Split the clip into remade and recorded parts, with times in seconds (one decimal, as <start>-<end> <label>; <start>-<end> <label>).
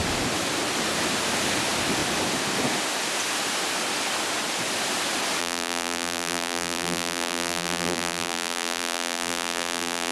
0.0-5.4 recorded; 5.4-10.1 remade